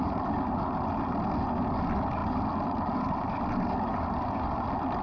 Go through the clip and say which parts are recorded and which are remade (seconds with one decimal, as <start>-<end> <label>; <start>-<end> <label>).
0.0-5.0 recorded

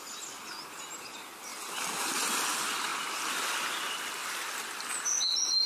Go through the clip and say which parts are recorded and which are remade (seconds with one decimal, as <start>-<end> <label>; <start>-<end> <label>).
0.0-2.9 recorded; 2.9-3.5 remade; 3.5-5.7 recorded

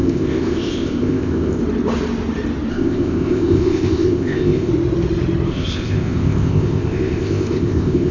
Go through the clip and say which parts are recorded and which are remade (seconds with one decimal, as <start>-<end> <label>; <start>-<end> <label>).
0.0-1.6 remade; 1.6-2.7 recorded; 2.7-4.7 remade; 4.7-5.5 recorded; 5.5-8.1 remade

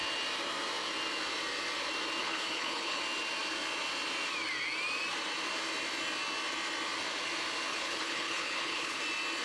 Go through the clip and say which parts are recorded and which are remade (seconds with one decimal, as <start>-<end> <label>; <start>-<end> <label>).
0.0-2.2 recorded; 2.2-3.0 remade; 3.0-7.7 recorded; 7.7-9.0 remade; 9.0-9.4 recorded

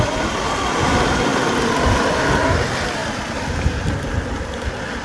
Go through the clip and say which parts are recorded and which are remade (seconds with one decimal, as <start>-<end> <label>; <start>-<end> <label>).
0.0-5.0 recorded

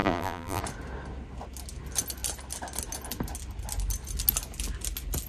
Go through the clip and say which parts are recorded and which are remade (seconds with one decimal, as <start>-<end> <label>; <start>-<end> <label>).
0.0-0.6 remade; 0.6-5.3 recorded